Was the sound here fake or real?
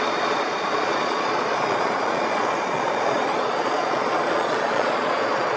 fake